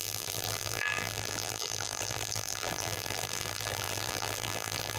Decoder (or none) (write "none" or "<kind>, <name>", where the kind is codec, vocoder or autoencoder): vocoder, BigVGAN v2